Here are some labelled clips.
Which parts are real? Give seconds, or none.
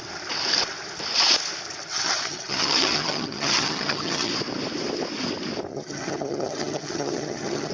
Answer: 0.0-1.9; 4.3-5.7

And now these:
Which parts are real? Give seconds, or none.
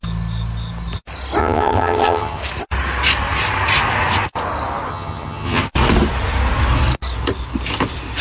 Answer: 0.0-1.4; 2.4-4.9; 5.6-8.2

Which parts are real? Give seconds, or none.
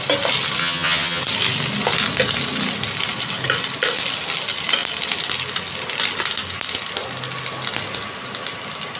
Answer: 0.0-0.6; 1.2-9.0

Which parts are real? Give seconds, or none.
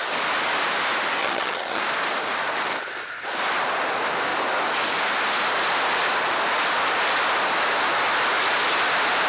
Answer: 0.0-1.2; 1.8-9.3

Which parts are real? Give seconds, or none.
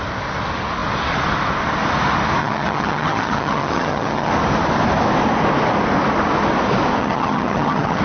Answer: 0.0-2.4; 4.3-7.0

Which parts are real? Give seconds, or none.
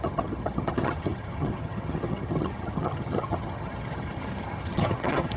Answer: none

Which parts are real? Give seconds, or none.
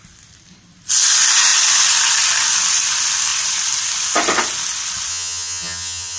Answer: 0.0-5.1